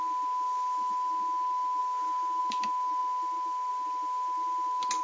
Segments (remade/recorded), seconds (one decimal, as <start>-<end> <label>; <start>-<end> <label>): 0.0-5.0 recorded